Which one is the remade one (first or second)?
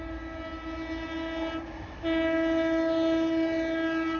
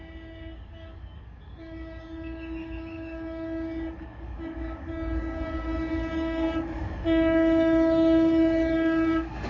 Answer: second